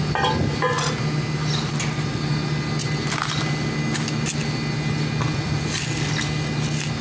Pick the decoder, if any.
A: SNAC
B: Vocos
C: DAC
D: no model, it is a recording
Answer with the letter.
D